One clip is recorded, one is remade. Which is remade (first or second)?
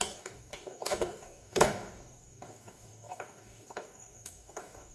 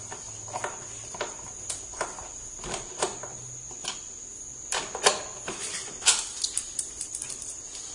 first